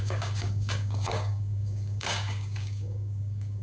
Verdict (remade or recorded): remade